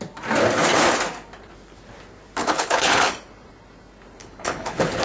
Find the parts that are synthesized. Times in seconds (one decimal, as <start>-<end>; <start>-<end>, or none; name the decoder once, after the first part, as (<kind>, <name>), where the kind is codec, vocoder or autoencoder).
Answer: 2.4-3.1 (codec, HILCodec); 4.2-5.0

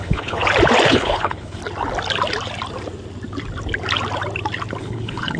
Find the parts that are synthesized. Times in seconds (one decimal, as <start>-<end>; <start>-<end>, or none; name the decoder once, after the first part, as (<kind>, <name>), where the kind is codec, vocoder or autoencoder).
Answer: 0.0-0.4 (codec, HILCodec); 0.9-1.6; 4.8-5.4

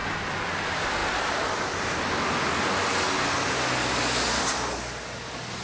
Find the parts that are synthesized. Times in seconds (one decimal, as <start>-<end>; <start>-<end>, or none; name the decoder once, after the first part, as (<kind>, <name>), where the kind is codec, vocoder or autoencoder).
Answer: none